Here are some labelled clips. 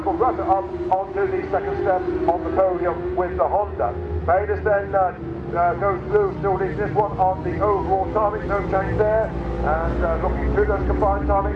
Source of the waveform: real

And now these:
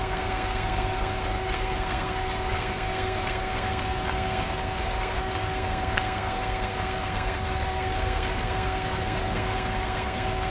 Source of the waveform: fake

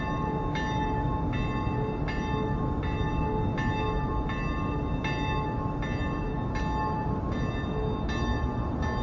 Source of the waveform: real